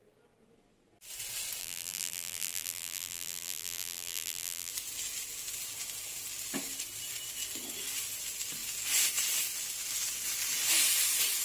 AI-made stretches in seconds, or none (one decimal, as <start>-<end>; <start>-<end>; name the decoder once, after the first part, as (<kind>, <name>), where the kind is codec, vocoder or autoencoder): 1.6-4.7 (vocoder, BigVGAN v2)